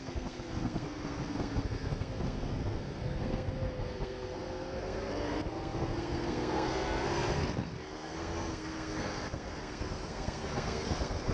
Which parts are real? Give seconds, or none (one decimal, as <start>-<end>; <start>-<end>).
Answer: none